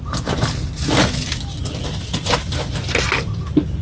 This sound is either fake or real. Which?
real